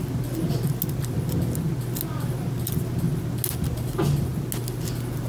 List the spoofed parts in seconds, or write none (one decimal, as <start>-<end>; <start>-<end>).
none